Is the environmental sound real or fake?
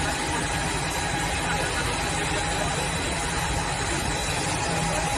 real